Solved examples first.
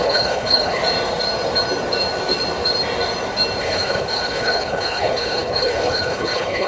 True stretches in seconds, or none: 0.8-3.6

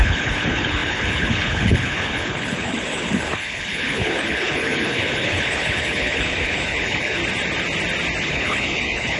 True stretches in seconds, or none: 7.2-8.2

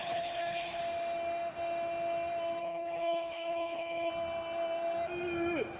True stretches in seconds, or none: 0.8-2.6; 4.1-5.8

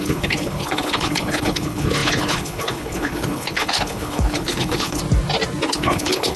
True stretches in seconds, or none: 5.0-5.7

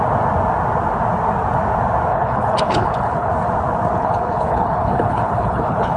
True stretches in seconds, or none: 0.0-2.1; 3.3-4.0